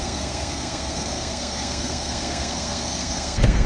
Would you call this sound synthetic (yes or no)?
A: yes